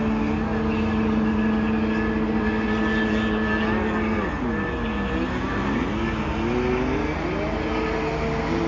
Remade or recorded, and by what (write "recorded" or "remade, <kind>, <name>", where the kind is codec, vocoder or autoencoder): recorded